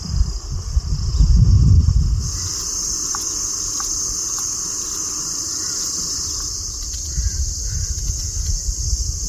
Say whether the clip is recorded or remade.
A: recorded